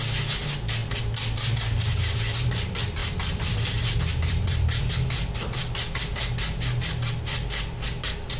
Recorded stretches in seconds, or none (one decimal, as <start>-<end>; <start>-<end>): 0.0-3.0; 4.9-8.4